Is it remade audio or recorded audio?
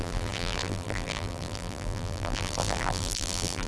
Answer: remade